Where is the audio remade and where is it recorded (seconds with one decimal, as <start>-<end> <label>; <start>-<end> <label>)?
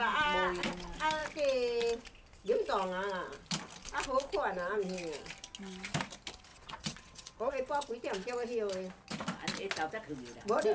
0.0-6.5 recorded; 6.5-7.5 remade; 7.5-10.7 recorded